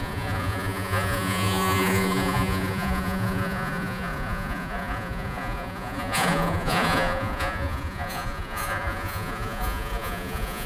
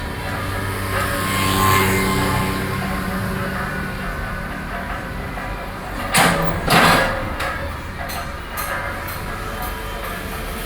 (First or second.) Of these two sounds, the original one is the second